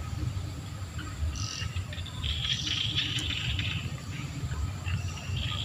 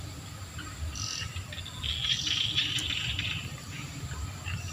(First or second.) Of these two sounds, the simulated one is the first